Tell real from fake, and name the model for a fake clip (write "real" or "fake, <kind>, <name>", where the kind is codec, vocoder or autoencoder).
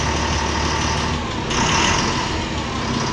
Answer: real